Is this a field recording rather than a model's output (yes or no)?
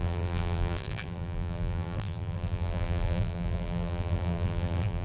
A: no